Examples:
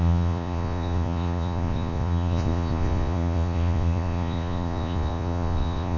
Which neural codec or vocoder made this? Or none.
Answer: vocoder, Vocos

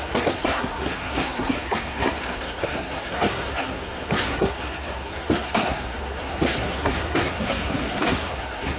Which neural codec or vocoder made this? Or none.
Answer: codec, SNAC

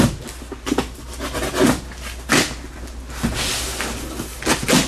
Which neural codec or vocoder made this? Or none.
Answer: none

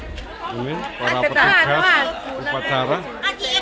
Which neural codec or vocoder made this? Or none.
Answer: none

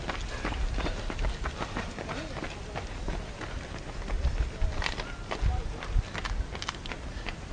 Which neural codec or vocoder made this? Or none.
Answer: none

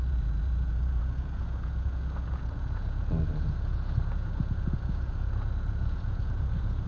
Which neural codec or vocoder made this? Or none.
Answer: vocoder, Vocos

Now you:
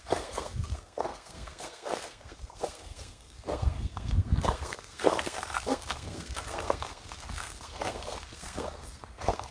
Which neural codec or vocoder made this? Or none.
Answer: codec, SNAC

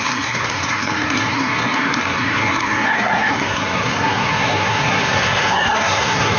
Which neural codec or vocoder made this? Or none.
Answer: codec, SNAC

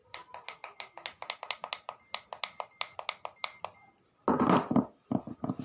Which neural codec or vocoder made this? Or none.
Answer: none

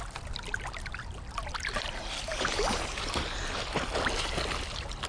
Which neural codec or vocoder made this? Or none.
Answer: none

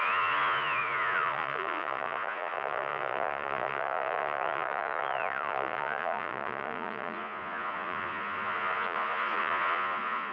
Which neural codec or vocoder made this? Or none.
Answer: vocoder, Vocos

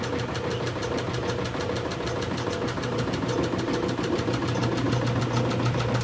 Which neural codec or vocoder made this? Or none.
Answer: none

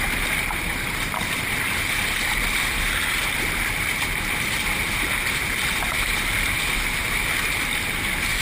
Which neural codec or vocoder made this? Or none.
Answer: none